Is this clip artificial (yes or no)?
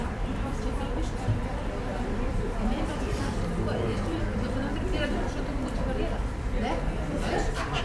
yes